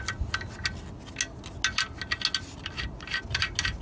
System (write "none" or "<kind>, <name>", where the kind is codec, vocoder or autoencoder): none